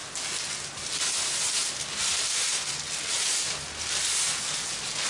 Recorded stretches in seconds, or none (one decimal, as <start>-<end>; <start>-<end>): 0.0-5.1